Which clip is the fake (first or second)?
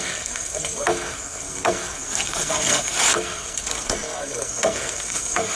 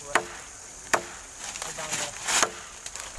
first